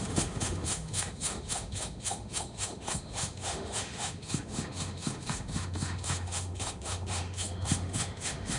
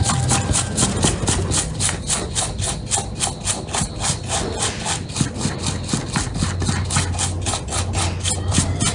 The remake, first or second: first